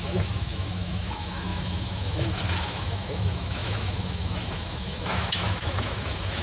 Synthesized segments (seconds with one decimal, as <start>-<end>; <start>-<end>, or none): 0.0-6.4